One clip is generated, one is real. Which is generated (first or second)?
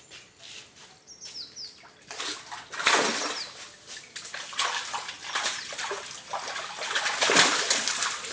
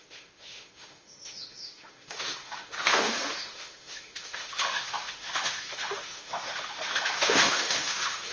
second